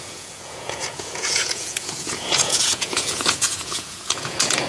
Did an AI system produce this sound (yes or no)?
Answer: yes